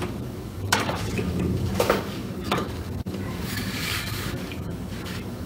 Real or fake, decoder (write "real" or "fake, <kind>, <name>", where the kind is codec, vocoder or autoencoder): fake, codec, DAC